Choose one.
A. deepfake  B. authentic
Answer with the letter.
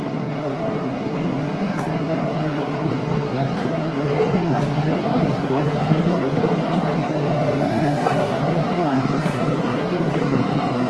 A